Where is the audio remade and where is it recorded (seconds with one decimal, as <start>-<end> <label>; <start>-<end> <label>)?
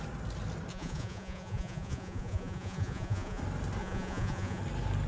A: 0.0-0.7 recorded; 0.7-3.4 remade; 3.4-3.8 recorded; 3.8-4.6 remade; 4.6-5.1 recorded